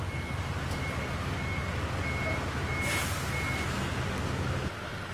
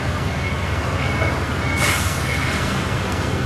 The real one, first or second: first